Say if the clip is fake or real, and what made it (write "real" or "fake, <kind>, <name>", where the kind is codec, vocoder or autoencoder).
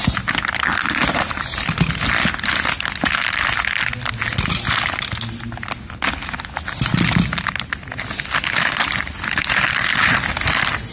real